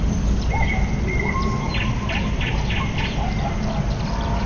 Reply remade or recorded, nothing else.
recorded